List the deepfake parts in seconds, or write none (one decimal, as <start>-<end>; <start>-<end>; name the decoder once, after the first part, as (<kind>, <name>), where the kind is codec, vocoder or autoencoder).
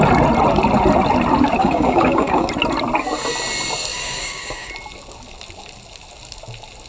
1.6-2.5 (codec, DAC); 3.9-4.7